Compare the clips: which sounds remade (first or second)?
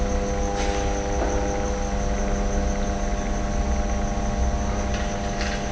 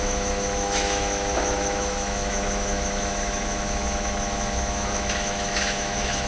second